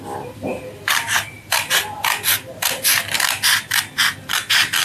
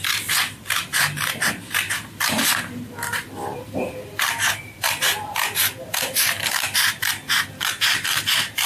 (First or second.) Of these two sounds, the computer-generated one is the second